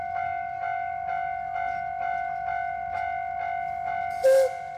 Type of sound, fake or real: real